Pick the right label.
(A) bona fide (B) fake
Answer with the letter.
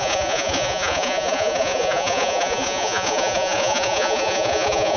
B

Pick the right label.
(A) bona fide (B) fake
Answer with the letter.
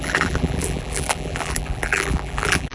B